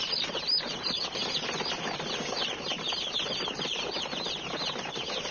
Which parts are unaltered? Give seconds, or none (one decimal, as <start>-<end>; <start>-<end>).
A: 0.0-5.3